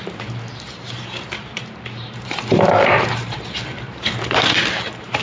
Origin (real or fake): fake